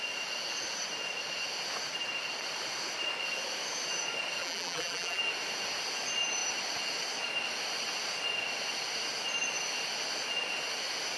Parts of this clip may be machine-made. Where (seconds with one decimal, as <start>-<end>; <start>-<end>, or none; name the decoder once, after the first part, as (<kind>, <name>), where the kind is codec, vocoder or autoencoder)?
4.4-5.2 (vocoder, BigVGAN v2)